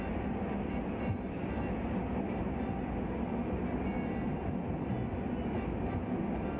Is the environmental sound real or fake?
real